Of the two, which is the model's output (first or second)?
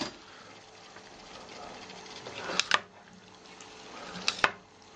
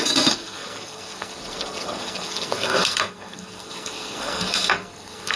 second